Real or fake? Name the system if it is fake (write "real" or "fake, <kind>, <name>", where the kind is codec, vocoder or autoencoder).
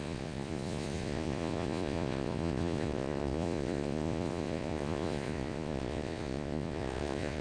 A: fake, vocoder, Vocos